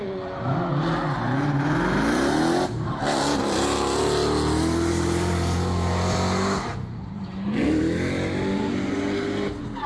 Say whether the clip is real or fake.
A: real